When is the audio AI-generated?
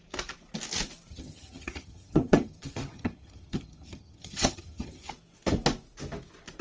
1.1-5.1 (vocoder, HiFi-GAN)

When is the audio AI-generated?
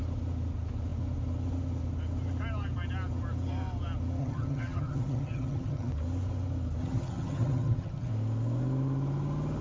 4.2-5.9 (vocoder, HiFi-GAN); 6.8-8.1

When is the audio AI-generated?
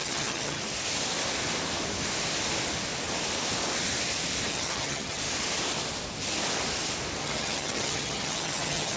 0.0-0.6 (vocoder, HiFi-GAN); 4.5-5.2; 7.2-9.0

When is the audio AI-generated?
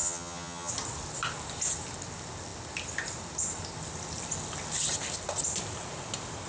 0.0-0.7 (vocoder, HiFi-GAN)